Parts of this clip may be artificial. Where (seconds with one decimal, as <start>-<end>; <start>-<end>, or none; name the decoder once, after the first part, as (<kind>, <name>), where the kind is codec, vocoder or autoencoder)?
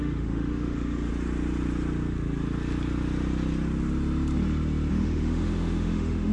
0.0-1.1 (autoencoder, DAC-VAE); 4.9-6.3